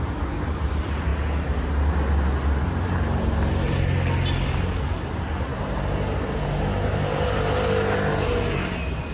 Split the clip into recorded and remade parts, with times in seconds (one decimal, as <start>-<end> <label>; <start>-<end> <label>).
0.0-9.1 recorded